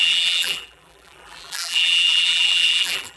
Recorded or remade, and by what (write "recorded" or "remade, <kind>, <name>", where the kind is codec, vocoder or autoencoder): remade, vocoder, BigVGAN v2